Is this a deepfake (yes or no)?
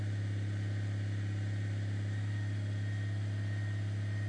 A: no